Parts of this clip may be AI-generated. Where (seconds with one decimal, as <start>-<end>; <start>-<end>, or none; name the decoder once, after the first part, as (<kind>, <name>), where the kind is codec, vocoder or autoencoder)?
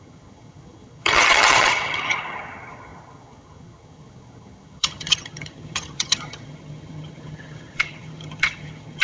0.0-9.0 (vocoder, HiFi-GAN)